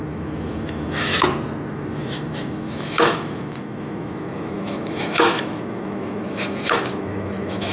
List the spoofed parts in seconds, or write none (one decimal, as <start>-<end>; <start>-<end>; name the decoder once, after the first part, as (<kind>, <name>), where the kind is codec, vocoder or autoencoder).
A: 0.0-1.1 (autoencoder, DAC-VAE); 1.7-7.7